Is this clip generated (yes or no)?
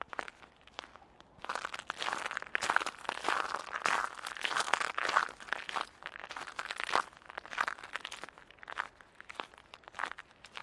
no